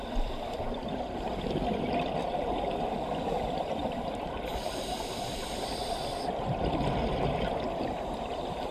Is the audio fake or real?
fake